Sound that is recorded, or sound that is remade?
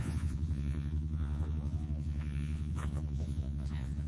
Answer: remade